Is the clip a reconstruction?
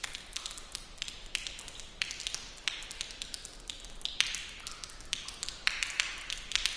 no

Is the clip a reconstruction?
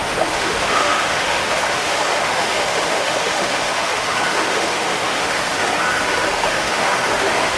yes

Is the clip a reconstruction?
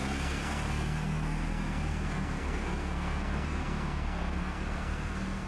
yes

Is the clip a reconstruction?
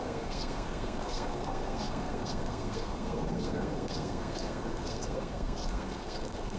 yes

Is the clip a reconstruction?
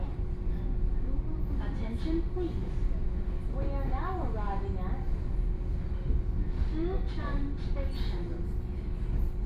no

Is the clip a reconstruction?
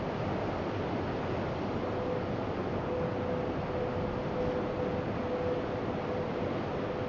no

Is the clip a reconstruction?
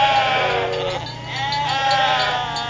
no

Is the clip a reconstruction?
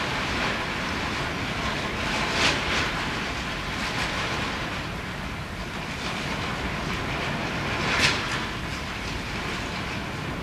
no